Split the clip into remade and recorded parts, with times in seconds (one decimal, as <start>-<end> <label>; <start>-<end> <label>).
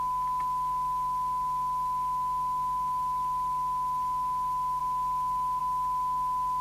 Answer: 0.0-6.6 recorded